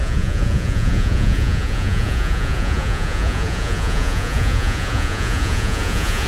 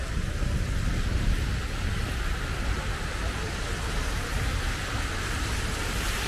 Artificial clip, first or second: first